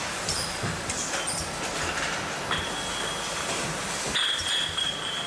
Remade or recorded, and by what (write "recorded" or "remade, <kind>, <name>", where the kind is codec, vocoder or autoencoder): recorded